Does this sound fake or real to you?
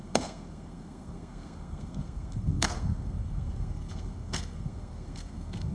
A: fake